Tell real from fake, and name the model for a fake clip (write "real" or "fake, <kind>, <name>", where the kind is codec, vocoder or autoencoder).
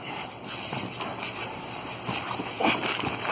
real